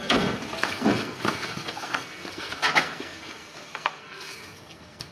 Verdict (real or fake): fake